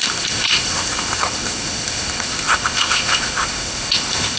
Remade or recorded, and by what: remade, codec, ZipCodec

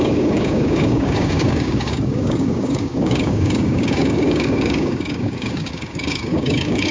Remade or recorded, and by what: remade, codec, DAC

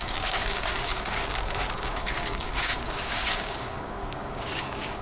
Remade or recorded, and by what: remade, codec, DAC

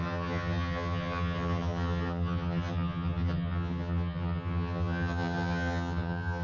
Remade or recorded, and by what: remade, vocoder, HiFi-GAN